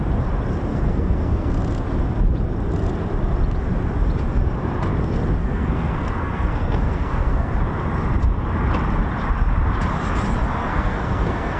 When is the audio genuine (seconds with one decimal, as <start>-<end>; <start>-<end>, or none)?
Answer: 0.0-0.7; 1.5-5.4; 7.5-10.6